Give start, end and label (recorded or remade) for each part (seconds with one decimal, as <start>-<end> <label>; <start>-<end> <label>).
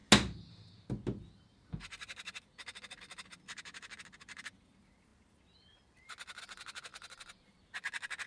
0.0-8.3 recorded